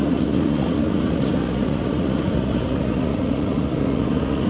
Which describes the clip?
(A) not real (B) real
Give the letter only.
A